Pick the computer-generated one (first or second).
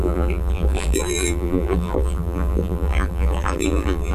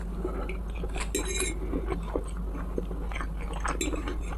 first